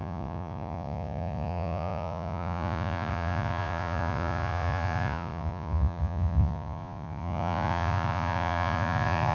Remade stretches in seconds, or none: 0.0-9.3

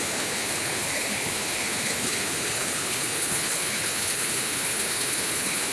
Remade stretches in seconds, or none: 0.0-5.7

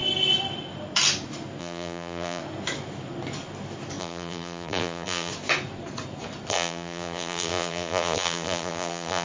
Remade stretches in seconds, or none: 1.6-2.4; 4.0-5.3; 6.5-9.2

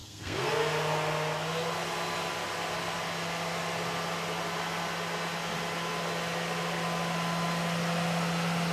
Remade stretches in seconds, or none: 0.0-0.5

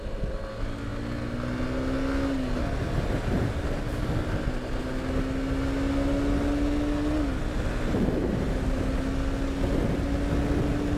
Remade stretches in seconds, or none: none

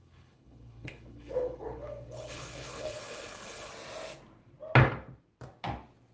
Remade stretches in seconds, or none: 0.0-3.7

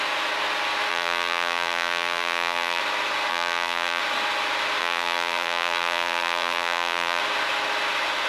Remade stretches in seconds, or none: 0.9-2.8; 3.3-4.0; 4.8-7.2